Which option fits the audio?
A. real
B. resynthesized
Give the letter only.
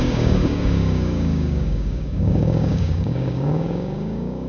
B